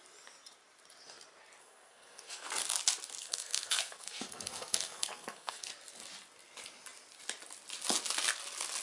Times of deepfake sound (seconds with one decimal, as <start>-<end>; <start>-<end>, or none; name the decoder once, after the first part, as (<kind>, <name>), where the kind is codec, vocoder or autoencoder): 1.6-2.5 (codec, SNAC); 3.2-5.7